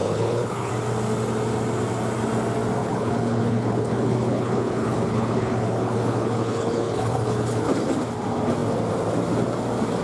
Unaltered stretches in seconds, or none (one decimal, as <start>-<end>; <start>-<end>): 0.7-2.8; 7.7-10.0